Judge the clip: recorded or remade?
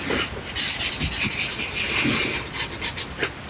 recorded